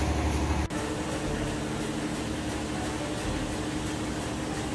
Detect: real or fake real